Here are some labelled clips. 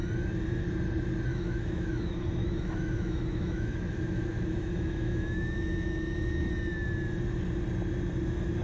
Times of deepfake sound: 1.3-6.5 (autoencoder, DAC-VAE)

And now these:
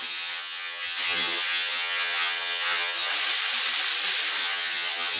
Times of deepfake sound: 0.0-3.1 (vocoder, HiFi-GAN); 4.4-5.2

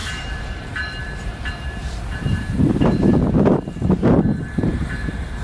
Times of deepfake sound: 0.0-3.1 (vocoder, BigVGAN v2); 4.4-5.4

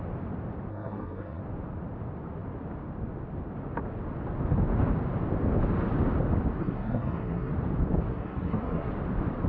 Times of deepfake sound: 0.7-1.4 (codec, SNAC); 6.6-7.5; 8.1-8.9

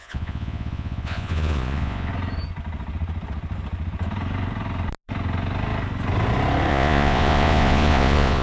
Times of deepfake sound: 0.0-2.1 (vocoder, Vocos); 6.7-8.4

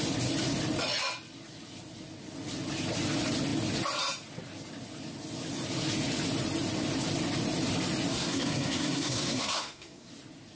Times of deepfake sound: 8.1-10.1 (codec, SNAC)

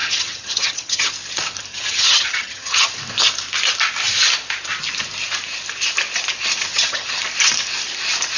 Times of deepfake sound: 0.0-1.1 (vocoder, HiFi-GAN); 1.7-2.9; 6.7-7.2

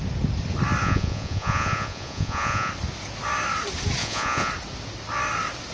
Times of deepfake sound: 0.8-2.7 (vocoder, Vocos); 4.0-4.5